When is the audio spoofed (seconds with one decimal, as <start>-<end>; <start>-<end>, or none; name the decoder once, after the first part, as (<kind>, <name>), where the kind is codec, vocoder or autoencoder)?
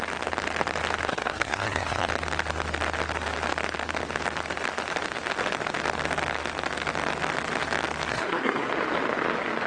1.1-2.1 (codec, SNAC); 8.1-8.7